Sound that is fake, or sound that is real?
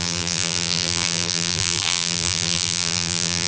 fake